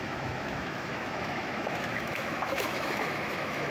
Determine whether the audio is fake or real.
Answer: fake